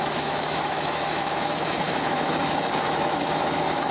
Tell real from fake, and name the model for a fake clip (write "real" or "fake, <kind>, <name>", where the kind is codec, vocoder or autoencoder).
fake, autoencoder, DAC-VAE